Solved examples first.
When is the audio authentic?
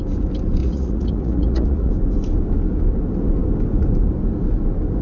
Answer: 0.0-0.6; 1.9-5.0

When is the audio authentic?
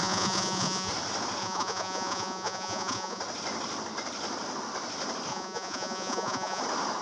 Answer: 0.9-1.4; 3.2-5.3; 6.6-7.0